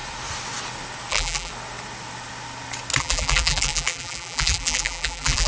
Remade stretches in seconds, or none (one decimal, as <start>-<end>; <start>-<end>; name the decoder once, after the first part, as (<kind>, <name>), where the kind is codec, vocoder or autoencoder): 1.1-1.5 (vocoder, BigVGAN v2); 3.0-5.5